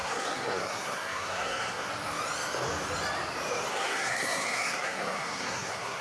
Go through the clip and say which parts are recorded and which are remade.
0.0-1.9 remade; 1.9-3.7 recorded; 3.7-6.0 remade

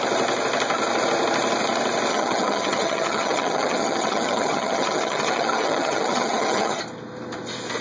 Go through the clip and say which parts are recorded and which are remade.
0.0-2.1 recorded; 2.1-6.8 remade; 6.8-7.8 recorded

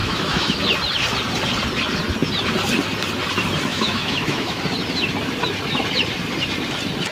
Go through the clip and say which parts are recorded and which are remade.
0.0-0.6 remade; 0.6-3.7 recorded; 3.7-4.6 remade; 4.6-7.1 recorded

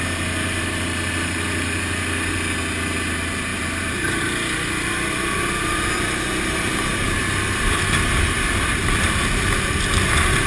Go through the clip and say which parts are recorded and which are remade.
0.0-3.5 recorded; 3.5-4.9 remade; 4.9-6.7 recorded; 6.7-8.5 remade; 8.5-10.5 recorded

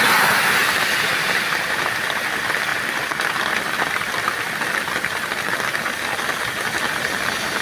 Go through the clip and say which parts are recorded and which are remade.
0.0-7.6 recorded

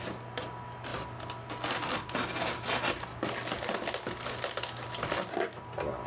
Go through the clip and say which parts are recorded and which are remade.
0.0-6.1 recorded

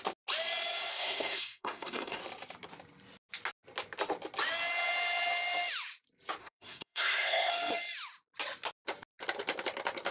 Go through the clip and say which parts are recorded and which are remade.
0.0-0.9 recorded; 0.9-2.2 remade; 2.2-6.4 recorded; 6.4-7.5 remade; 7.5-10.1 recorded